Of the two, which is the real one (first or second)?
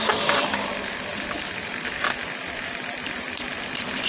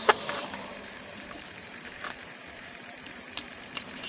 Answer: first